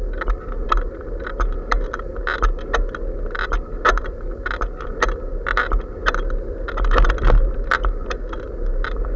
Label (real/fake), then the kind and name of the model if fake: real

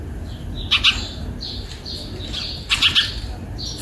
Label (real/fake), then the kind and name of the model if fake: real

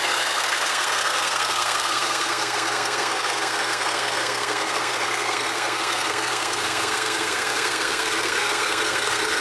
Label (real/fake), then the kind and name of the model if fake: fake, codec, SNAC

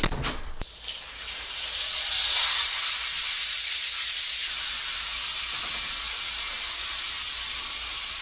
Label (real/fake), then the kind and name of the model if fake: real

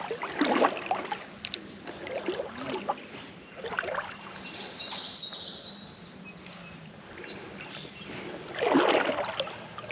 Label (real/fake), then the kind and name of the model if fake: real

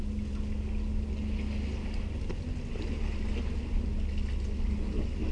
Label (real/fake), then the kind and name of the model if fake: real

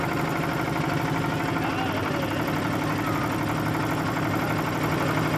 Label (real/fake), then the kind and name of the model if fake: real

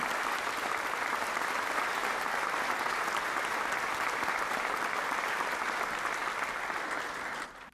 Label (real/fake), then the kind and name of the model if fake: real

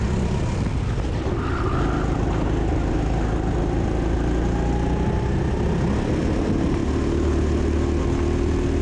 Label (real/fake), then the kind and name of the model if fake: real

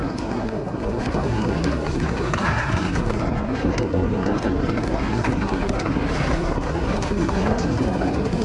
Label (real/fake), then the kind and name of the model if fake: fake, codec, SNAC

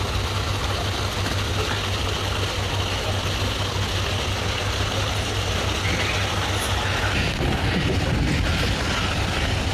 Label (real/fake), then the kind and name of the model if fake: real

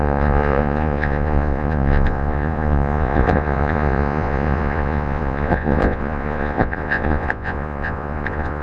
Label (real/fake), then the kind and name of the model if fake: fake, vocoder, Vocos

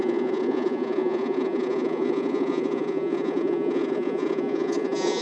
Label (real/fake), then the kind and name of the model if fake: fake, vocoder, Vocos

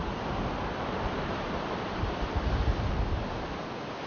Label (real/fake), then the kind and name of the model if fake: real